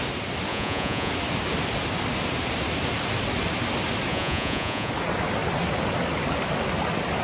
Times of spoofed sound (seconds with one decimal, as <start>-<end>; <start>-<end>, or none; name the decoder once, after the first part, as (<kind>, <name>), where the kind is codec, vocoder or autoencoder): 0.5-1.1 (vocoder, Vocos); 4.1-4.9